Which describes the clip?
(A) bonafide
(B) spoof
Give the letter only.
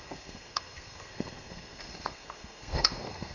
B